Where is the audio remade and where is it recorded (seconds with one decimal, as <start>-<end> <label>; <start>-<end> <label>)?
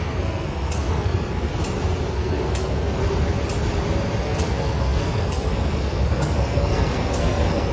0.0-1.5 remade; 1.5-2.1 recorded; 2.1-3.0 remade; 3.0-4.2 recorded; 4.2-7.7 remade